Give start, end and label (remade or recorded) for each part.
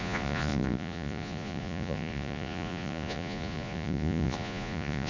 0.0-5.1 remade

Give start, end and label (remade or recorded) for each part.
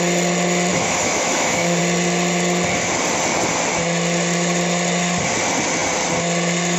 0.0-0.7 recorded; 0.7-1.8 remade; 1.8-6.8 recorded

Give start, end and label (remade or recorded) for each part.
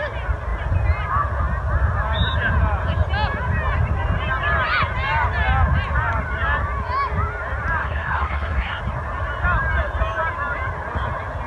0.0-7.8 recorded; 7.8-8.8 remade; 8.8-11.5 recorded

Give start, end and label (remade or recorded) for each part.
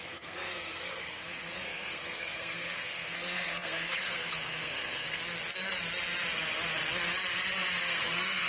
0.0-5.2 remade; 5.2-7.8 recorded; 7.8-8.5 remade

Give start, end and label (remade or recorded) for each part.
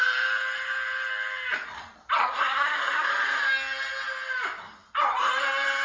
0.0-2.2 recorded; 2.2-3.1 remade; 3.1-5.8 recorded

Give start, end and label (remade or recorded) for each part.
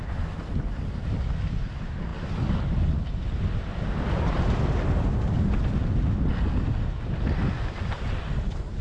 0.0-8.8 recorded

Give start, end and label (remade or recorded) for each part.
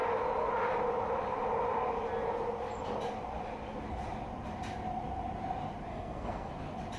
0.0-5.9 recorded; 5.9-6.5 remade; 6.5-7.0 recorded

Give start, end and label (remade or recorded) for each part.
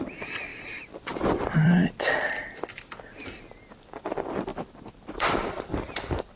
0.0-0.5 recorded; 0.5-2.3 remade; 2.3-4.5 recorded; 4.5-6.4 remade